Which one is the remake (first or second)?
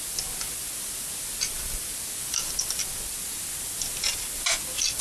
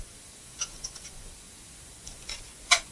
second